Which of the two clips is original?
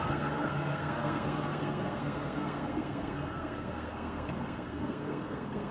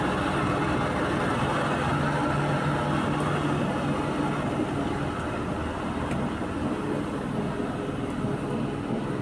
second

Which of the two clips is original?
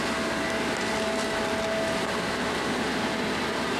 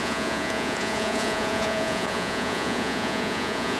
first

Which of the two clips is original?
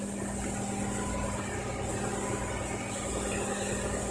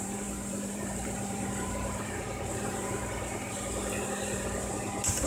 first